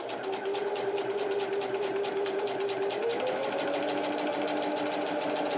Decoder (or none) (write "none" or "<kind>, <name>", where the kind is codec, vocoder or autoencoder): none